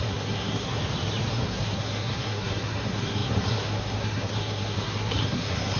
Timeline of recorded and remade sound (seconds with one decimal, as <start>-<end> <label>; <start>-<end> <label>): 0.0-0.8 remade; 0.8-1.3 recorded; 1.3-5.8 remade